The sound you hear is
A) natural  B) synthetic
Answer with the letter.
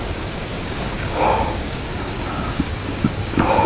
B